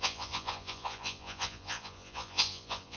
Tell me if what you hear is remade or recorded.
remade